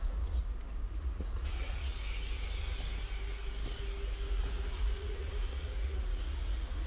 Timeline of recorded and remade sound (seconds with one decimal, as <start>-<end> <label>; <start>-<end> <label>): 0.0-0.4 remade; 0.4-1.0 recorded; 1.0-1.9 remade; 1.9-4.3 recorded; 4.3-6.9 remade

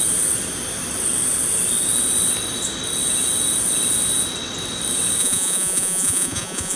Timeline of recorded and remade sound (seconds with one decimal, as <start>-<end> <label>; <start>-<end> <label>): 0.0-5.2 recorded; 5.2-6.8 remade

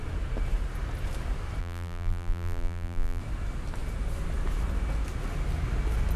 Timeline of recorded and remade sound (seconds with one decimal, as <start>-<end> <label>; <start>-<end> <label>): 0.0-1.6 recorded; 1.6-3.2 remade; 3.2-6.2 recorded

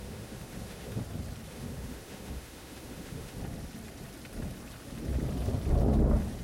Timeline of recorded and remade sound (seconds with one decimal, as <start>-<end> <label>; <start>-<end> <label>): 0.0-1.0 remade; 1.0-1.5 recorded; 1.5-3.4 remade; 3.4-6.4 recorded